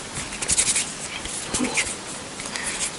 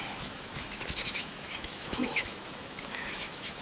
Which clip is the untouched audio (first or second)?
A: first